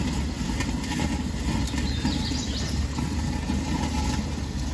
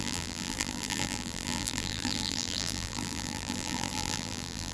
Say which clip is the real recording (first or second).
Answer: first